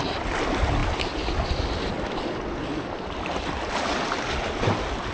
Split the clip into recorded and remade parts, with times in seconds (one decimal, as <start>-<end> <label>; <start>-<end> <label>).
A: 0.0-5.1 recorded